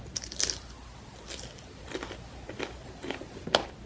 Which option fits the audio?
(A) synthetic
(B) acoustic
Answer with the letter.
B